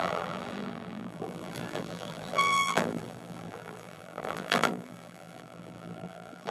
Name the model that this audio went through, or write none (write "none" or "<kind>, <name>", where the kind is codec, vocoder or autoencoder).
vocoder, BigVGAN v2